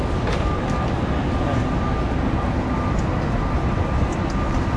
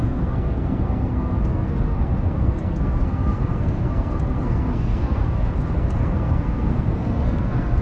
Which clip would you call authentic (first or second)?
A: first